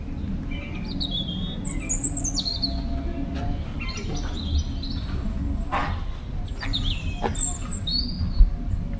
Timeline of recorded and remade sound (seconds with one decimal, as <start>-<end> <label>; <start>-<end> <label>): 0.0-9.0 recorded